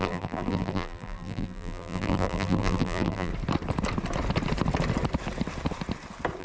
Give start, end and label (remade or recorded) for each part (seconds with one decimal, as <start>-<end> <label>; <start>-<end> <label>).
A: 0.0-3.3 remade; 3.3-6.4 recorded